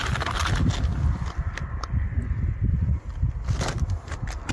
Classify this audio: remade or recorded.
recorded